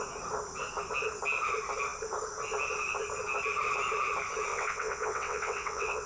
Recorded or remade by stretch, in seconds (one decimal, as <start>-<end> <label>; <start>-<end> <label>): 0.0-4.5 recorded; 4.5-6.1 remade